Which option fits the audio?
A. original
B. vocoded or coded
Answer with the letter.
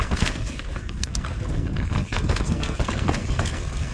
B